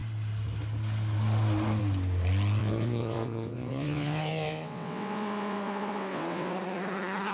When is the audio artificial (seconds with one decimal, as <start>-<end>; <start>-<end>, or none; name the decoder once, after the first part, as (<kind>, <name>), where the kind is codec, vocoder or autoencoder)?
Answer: 2.6-6.5 (vocoder, WaveNeXt)